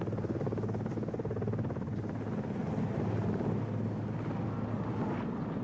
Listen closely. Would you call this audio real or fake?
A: real